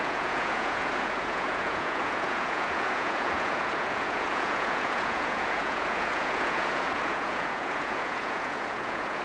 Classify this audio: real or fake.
fake